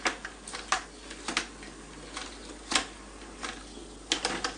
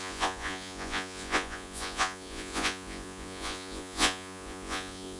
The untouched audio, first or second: first